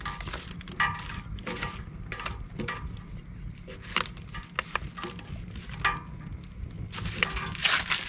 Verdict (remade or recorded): recorded